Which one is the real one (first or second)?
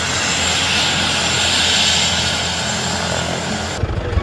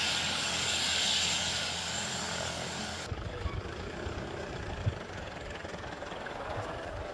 first